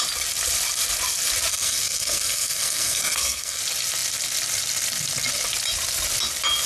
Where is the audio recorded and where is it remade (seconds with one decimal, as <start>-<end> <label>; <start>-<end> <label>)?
0.0-1.5 recorded; 1.5-3.6 remade; 3.6-6.7 recorded